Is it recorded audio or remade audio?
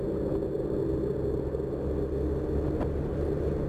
recorded